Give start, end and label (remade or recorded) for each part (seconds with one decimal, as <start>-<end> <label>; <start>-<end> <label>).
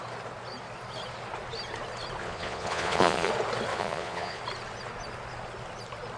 0.0-2.2 recorded; 2.2-3.3 remade; 3.3-3.7 recorded; 3.7-4.4 remade; 4.4-6.2 recorded